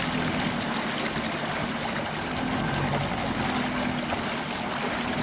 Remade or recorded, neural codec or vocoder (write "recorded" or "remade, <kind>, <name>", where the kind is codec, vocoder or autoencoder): recorded